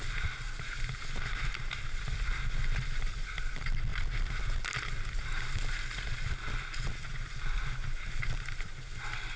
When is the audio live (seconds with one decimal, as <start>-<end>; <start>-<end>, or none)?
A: 0.0-9.4